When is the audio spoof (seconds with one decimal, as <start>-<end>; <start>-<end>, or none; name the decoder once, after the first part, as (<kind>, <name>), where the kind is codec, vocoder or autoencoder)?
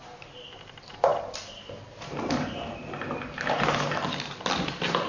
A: none